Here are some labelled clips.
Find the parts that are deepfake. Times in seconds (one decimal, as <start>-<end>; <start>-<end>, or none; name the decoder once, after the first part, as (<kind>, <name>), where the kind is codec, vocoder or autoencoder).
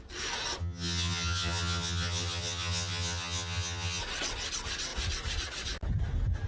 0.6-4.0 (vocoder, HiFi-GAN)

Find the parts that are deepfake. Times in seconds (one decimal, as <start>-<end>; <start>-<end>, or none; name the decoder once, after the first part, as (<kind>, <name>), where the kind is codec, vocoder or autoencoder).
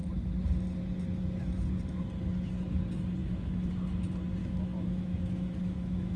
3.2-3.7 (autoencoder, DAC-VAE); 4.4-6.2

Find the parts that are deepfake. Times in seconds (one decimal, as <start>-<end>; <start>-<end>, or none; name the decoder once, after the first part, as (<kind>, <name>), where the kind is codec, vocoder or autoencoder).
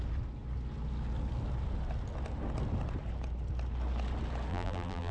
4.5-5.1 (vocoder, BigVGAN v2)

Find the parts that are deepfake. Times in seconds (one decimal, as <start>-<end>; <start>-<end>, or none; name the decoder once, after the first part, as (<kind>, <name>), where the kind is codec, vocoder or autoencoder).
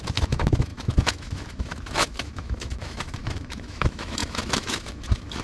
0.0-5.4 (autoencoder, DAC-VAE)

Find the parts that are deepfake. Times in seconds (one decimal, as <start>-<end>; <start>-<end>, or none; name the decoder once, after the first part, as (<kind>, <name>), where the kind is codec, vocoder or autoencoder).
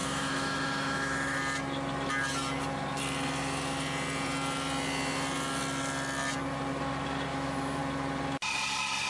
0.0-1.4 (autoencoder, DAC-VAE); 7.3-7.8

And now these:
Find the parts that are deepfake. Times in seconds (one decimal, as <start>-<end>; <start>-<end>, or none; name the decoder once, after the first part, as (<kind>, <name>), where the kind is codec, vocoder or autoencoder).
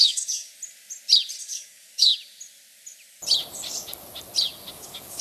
0.0-0.5 (codec, DAC); 1.4-2.1; 4.7-5.2